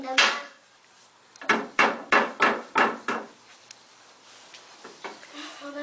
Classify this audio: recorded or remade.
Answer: recorded